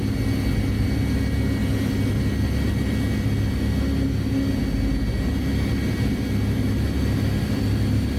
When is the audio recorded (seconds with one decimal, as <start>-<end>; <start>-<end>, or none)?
0.0-8.2

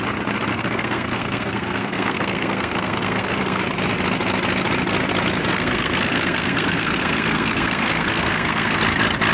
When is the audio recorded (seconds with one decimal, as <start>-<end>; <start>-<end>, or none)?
0.0-0.5; 3.6-5.5; 8.8-9.3